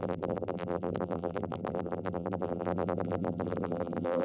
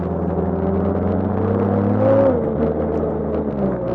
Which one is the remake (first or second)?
first